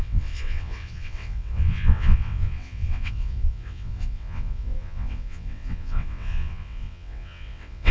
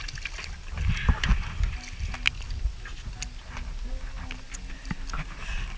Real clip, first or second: second